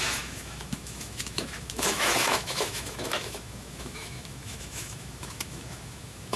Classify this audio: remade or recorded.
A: remade